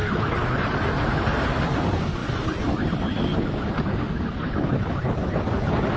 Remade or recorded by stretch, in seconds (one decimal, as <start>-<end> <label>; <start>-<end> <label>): 0.0-0.6 remade; 0.6-2.2 recorded; 2.2-3.8 remade; 3.8-6.0 recorded